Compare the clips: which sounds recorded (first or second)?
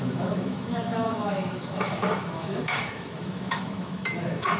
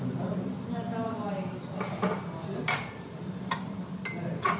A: second